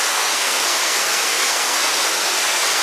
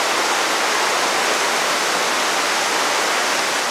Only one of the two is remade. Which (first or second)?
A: first